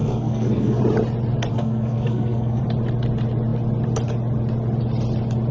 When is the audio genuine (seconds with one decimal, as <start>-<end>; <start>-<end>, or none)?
0.8-1.5; 2.6-5.5